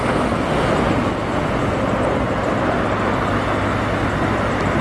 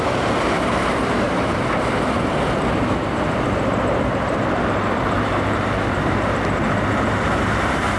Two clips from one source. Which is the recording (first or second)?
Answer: first